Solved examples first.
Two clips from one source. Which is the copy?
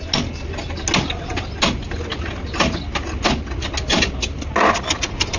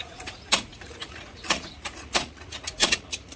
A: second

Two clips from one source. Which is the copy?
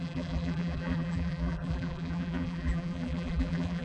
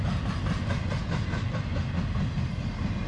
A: first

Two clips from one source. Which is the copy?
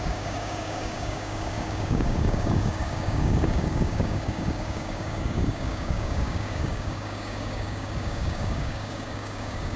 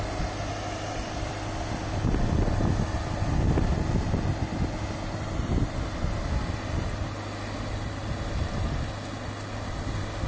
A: first